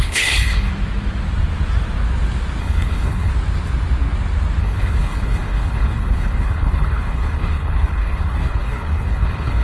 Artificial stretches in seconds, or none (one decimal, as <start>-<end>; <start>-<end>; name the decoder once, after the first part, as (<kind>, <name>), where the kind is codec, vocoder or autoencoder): 0.0-0.7 (codec, HILCodec); 2.6-3.3; 4.6-9.6